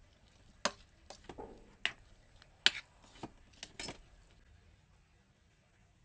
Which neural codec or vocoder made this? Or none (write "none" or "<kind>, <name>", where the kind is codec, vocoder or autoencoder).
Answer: none